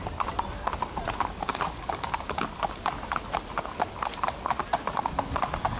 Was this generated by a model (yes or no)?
no